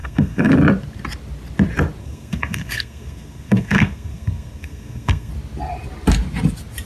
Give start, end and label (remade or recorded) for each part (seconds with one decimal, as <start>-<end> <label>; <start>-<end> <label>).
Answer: 0.0-0.5 remade; 0.5-2.0 recorded; 2.0-5.3 remade; 5.3-6.8 recorded